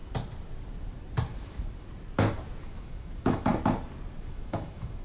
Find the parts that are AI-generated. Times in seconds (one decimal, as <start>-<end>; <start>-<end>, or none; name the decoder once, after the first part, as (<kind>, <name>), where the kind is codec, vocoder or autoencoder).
2.6-3.5 (autoencoder, DAC-VAE); 4.2-5.0